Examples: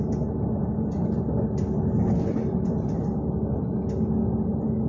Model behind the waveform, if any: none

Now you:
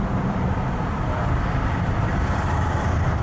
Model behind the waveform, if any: vocoder, BigVGAN v2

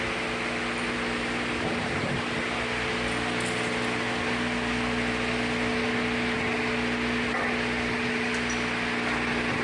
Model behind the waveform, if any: none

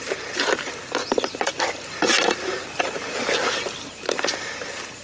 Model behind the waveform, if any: none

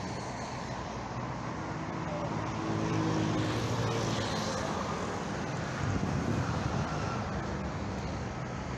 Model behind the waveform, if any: none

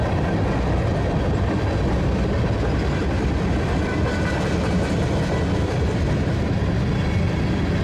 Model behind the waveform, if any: none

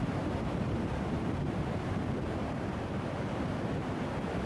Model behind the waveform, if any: vocoder, BigVGAN v2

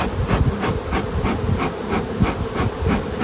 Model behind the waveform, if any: none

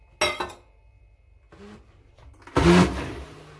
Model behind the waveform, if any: none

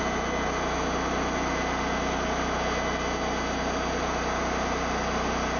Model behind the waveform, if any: none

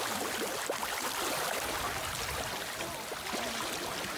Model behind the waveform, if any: none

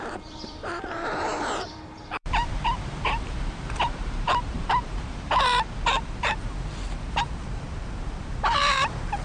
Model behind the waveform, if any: vocoder, BigVGAN v2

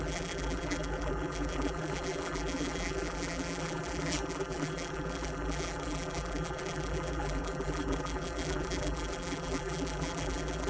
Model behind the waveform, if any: vocoder, BigVGAN v2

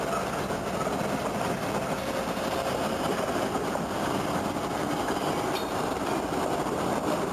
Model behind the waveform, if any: vocoder, BigVGAN v2